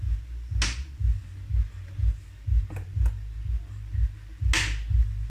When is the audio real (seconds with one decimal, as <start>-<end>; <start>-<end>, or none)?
0.0-5.3